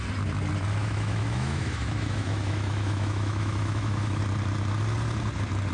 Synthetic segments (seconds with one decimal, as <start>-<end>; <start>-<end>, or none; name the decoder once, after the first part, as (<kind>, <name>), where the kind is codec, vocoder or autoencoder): 0.8-4.2 (autoencoder, DAC-VAE)